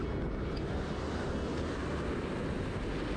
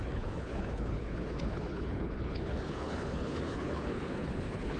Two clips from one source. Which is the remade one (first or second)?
second